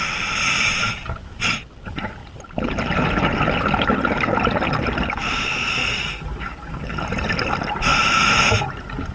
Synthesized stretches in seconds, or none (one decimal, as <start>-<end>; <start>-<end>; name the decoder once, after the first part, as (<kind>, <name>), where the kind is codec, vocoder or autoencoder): none